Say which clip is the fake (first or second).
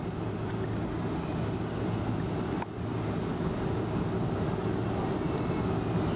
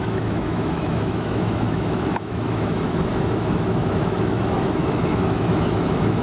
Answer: second